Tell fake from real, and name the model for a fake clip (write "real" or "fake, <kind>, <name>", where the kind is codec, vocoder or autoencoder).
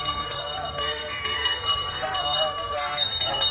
fake, codec, SNAC